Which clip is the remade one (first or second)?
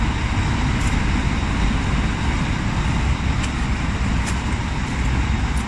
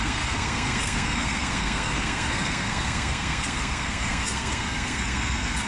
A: second